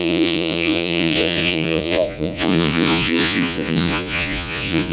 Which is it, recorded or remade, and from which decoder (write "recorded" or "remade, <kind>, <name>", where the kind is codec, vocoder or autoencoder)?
remade, vocoder, Vocos